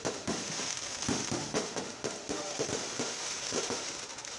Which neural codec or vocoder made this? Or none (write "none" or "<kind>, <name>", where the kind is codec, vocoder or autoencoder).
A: autoencoder, DAC-VAE